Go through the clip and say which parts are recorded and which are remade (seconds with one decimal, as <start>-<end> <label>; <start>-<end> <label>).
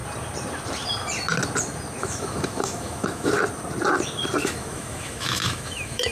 0.0-2.0 recorded; 2.0-3.3 remade; 3.3-4.4 recorded; 4.4-6.1 remade